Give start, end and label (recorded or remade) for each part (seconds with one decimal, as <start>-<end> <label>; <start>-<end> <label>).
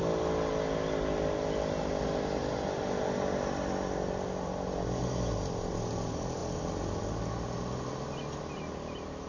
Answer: 0.0-9.3 recorded